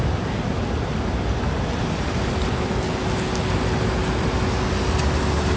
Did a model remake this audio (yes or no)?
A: no